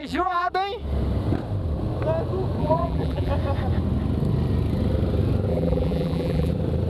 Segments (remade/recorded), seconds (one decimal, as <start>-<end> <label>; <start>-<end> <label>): 0.0-0.5 remade; 0.5-2.6 recorded; 2.6-3.3 remade; 3.3-5.5 recorded; 5.5-6.5 remade; 6.5-6.9 recorded

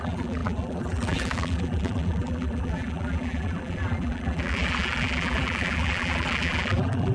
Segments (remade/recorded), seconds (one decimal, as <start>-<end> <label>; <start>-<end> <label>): 0.0-7.1 remade

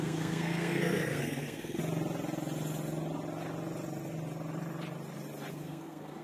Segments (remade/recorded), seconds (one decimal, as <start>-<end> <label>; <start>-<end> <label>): 0.0-1.8 remade; 1.8-5.5 recorded; 5.5-6.2 remade